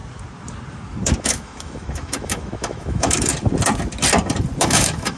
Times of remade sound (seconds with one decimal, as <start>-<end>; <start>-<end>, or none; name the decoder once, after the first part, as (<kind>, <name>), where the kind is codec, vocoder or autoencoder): 1.2-3.3 (autoencoder, DAC-VAE); 4.6-5.2